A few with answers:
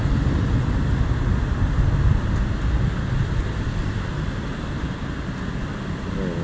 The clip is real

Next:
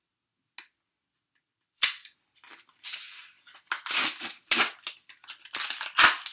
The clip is real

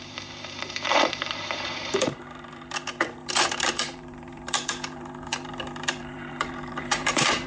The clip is fake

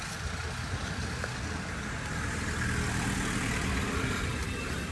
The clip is real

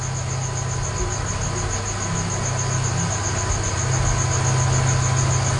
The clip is real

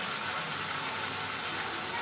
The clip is real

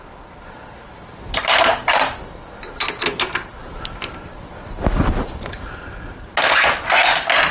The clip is real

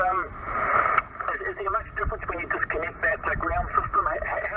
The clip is real